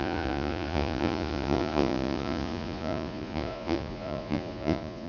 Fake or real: fake